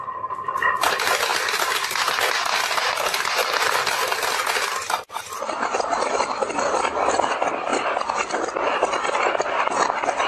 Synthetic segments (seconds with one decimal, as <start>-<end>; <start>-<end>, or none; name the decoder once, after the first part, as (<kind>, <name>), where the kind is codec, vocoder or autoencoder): 0.0-1.3 (vocoder, BigVGAN v2); 5.2-10.3